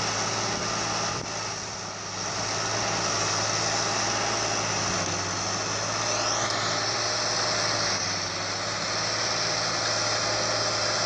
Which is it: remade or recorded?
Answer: recorded